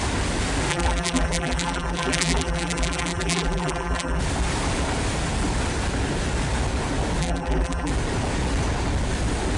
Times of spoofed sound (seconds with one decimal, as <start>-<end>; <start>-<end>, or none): 0.7-4.2; 7.2-7.9